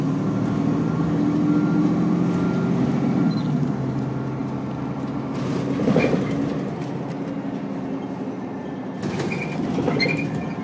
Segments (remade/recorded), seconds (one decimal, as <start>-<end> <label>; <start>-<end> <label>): 0.0-10.6 recorded